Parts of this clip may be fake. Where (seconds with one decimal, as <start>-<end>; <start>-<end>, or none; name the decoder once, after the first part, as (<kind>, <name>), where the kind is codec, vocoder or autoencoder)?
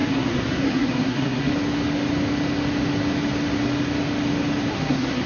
0.0-1.5 (codec, SNAC); 4.7-5.3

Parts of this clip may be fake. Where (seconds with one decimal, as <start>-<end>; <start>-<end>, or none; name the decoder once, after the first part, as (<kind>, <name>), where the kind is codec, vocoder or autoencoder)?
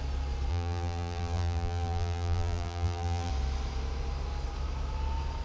0.5-3.3 (vocoder, BigVGAN v2)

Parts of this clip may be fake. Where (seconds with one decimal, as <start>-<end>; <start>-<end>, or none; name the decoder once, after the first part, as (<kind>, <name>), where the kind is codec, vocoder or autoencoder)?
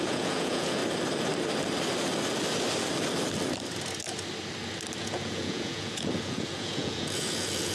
0.0-0.8 (vocoder, Vocos); 5.0-7.7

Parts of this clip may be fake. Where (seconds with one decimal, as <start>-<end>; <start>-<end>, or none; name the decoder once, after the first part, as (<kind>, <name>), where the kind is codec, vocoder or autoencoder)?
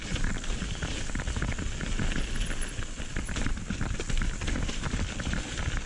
3.1-5.4 (vocoder, BigVGAN v2)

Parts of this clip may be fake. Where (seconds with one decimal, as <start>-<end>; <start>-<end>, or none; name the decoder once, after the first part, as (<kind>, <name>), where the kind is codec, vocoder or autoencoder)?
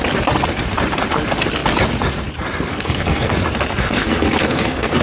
2.7-3.3 (codec, SNAC); 3.8-5.0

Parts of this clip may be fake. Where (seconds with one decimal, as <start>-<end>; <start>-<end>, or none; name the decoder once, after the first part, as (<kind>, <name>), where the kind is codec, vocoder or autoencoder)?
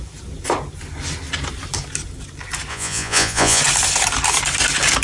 2.7-3.6 (vocoder, Vocos)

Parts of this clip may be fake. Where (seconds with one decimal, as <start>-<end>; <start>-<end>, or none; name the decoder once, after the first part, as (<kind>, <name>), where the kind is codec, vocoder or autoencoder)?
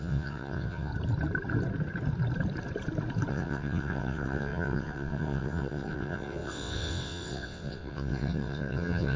0.0-0.9 (vocoder, WaveNeXt); 3.3-9.2